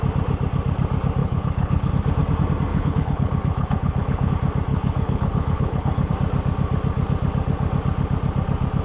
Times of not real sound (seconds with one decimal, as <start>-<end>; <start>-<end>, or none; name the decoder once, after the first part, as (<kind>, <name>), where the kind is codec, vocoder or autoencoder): 1.2-1.9 (codec, HILCodec); 2.7-4.3; 4.7-6.1